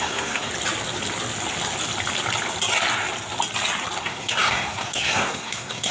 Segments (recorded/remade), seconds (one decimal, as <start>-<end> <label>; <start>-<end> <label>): 0.0-0.5 remade; 0.5-4.0 recorded; 4.0-5.9 remade